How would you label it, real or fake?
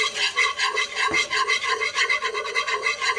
real